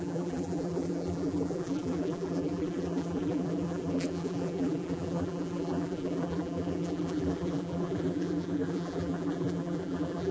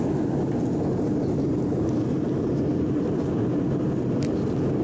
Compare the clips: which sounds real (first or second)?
second